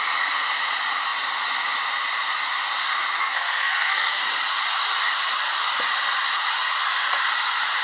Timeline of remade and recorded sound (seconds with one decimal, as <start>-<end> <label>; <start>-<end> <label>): 0.0-3.2 recorded; 3.2-4.2 remade; 4.2-7.8 recorded

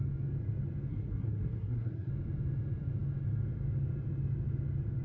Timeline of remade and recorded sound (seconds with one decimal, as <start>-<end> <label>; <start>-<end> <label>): 0.0-0.9 recorded; 0.9-2.1 remade; 2.1-5.0 recorded

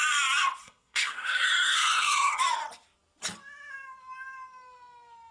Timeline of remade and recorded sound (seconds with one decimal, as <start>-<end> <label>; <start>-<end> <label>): 0.0-0.6 recorded; 0.6-2.4 remade; 2.4-5.3 recorded